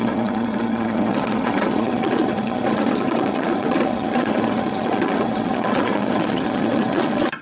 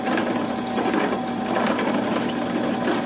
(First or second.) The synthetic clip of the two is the first